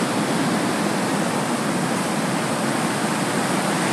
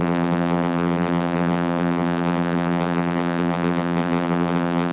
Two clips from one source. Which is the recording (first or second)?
first